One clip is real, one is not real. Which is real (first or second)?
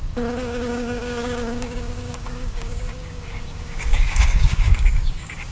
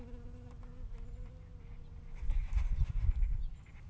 second